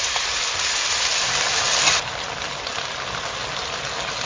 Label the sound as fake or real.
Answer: real